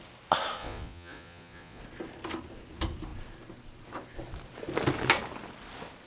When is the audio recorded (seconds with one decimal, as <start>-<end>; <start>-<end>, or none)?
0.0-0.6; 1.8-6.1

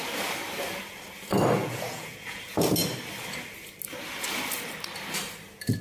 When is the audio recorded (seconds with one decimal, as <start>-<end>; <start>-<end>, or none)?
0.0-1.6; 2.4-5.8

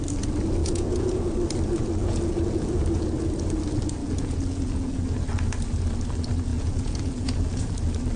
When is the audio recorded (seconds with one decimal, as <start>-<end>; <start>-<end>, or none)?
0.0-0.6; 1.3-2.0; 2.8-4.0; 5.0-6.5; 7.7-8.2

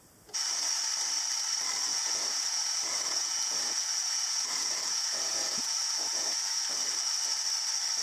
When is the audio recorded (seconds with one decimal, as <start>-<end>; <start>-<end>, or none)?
0.0-1.9; 6.6-8.0

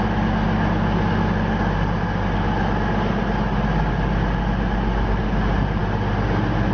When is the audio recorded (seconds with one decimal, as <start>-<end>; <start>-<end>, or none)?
0.0-6.7

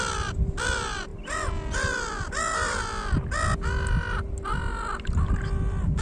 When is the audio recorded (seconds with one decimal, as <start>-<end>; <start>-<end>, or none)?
0.0-6.0

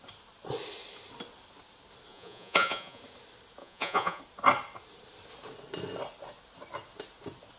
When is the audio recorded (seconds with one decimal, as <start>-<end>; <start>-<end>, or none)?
0.0-2.1; 3.0-3.6; 4.2-7.6

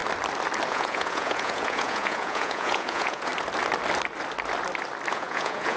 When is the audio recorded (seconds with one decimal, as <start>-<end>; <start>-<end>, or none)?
0.0-0.7; 3.3-5.1